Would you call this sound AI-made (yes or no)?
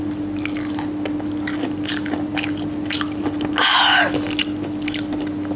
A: no